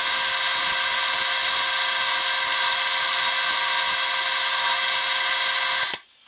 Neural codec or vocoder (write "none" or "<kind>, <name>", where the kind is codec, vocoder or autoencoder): none